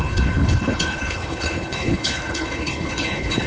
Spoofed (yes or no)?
yes